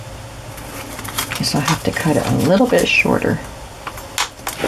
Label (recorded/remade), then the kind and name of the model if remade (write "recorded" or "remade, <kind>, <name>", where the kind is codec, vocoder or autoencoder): recorded